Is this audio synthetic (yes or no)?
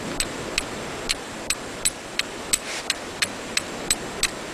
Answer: no